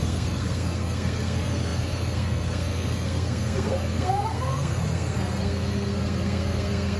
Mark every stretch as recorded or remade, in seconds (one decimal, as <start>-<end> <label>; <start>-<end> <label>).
0.0-7.0 remade